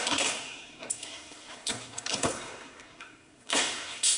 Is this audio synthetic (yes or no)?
yes